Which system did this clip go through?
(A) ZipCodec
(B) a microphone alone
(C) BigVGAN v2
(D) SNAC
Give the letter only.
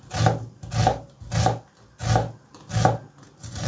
B